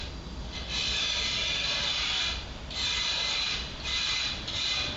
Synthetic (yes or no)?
yes